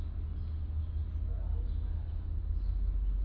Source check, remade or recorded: recorded